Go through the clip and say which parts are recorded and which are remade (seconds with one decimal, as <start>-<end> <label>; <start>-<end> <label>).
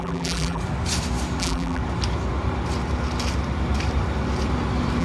0.0-0.6 remade; 0.6-1.4 recorded; 1.4-1.8 remade; 1.8-5.0 recorded